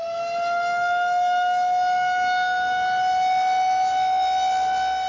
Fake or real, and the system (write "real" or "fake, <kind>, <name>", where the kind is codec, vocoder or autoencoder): real